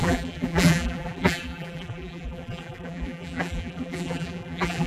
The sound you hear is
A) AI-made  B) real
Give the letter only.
A